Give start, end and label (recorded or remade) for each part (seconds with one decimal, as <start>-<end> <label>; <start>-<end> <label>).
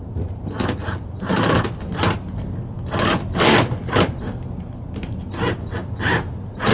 0.0-6.7 recorded